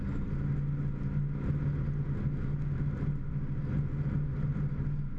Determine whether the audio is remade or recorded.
recorded